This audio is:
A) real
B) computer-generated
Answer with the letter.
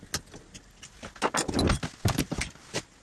A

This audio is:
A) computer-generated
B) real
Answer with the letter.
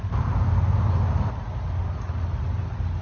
B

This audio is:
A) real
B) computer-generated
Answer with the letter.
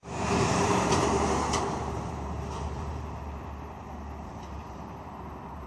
B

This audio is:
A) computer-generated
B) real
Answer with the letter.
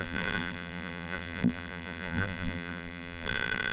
A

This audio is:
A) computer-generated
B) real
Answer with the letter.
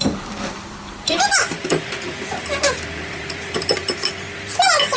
A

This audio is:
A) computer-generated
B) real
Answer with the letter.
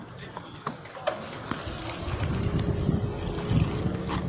B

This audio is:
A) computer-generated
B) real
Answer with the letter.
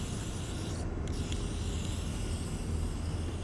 B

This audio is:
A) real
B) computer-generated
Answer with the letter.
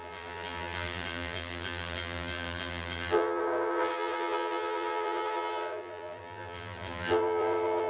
B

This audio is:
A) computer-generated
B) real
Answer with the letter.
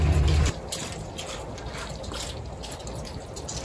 B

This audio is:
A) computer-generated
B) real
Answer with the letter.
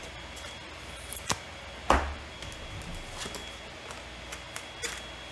B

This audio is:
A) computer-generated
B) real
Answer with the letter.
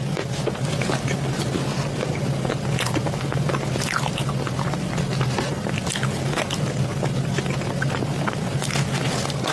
B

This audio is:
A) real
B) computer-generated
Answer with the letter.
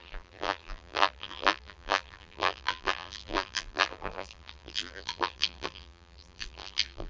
B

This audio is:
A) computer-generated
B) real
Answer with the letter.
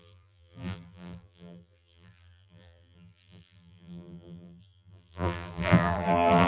A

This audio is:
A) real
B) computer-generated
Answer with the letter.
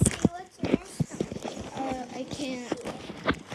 A